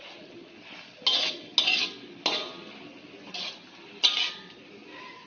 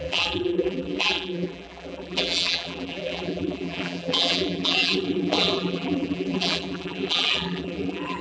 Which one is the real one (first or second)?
first